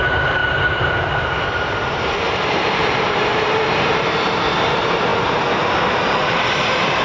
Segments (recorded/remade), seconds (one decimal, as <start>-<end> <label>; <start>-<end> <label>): 0.0-5.1 remade; 5.1-6.2 recorded; 6.2-7.0 remade